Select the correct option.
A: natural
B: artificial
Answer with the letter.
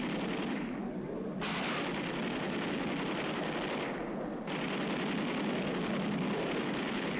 A